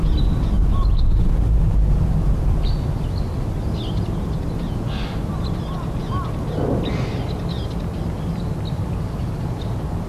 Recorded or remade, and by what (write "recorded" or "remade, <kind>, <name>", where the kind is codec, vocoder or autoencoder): recorded